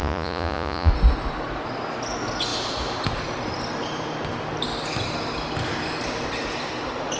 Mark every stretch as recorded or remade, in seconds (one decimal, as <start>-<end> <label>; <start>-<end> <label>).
0.0-0.9 remade; 0.9-7.2 recorded